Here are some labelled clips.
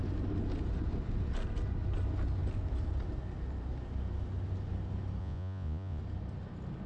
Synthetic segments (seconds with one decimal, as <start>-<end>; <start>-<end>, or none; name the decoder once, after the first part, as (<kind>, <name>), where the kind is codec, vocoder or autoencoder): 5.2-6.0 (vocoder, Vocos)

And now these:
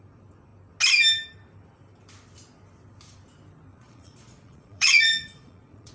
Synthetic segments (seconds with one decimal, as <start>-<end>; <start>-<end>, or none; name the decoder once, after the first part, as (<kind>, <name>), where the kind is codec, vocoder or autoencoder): 3.7-5.9 (vocoder, Vocos)

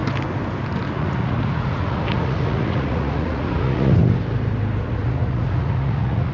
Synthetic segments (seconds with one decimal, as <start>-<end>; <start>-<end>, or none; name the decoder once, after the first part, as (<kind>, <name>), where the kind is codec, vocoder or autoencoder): 0.9-4.0 (vocoder, Vocos); 4.9-6.3

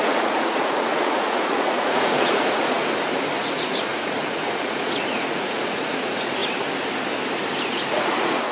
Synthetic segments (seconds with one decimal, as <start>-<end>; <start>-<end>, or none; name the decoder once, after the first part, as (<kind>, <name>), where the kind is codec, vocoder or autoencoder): 0.0-2.8 (vocoder, Vocos); 3.4-6.4; 7.7-8.5